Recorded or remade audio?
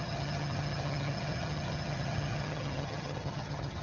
remade